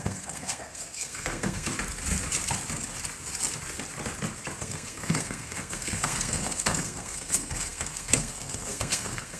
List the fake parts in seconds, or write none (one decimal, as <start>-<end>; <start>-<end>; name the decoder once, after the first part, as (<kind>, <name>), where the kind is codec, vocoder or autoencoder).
0.0-1.7 (codec, SNAC); 4.6-9.4